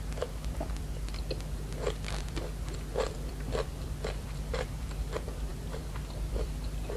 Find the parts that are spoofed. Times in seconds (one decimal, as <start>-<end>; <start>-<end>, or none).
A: 0.0-7.0